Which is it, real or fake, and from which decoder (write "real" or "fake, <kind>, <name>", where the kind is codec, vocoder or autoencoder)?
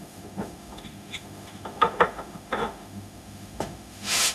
fake, autoencoder, DAC-VAE